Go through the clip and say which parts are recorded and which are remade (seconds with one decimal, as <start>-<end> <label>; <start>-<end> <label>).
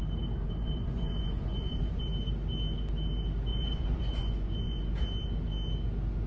0.0-0.4 recorded; 0.4-2.0 remade; 2.0-3.5 recorded; 3.5-4.9 remade; 4.9-6.3 recorded